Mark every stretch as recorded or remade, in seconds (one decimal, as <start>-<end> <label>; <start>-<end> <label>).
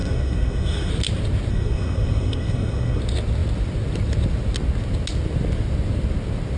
0.0-0.9 remade; 0.9-1.5 recorded; 1.5-3.0 remade; 3.0-6.6 recorded